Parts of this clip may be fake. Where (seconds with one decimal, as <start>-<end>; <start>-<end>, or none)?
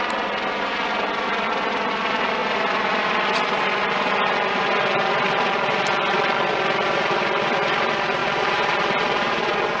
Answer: none